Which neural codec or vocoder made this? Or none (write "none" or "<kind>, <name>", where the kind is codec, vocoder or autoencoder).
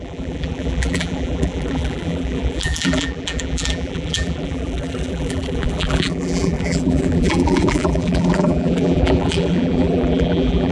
vocoder, BigVGAN v2